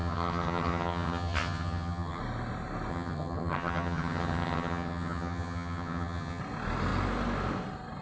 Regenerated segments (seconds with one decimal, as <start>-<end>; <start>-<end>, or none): 0.0-2.2; 2.9-6.4